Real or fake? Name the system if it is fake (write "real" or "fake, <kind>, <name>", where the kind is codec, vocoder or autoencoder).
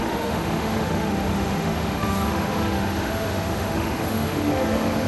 fake, autoencoder, DAC-VAE